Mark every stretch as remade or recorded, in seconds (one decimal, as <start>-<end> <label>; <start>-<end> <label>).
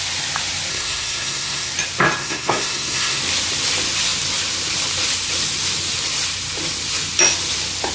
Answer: 0.0-0.7 recorded; 0.7-1.7 remade; 1.7-2.2 recorded; 2.2-3.2 remade; 3.2-7.9 recorded